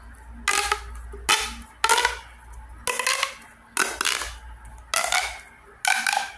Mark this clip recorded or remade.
recorded